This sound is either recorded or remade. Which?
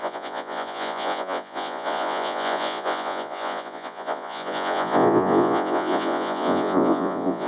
remade